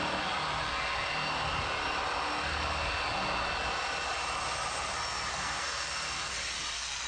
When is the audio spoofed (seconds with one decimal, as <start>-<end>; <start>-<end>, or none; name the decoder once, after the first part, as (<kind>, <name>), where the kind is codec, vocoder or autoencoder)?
5.3-6.3 (codec, SNAC)

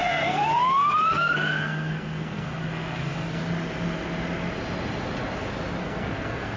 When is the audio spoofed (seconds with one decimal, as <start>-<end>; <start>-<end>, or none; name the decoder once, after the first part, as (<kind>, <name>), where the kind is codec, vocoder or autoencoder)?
0.0-3.4 (codec, SNAC); 5.8-6.6